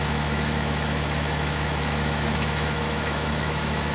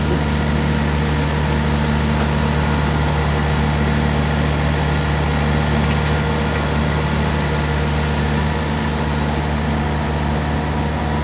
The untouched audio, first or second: second